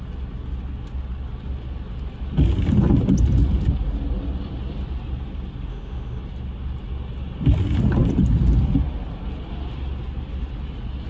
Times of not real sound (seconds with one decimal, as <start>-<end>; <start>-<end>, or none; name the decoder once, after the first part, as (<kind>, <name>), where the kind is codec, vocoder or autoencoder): 5.7-6.2 (autoencoder, DAC-VAE)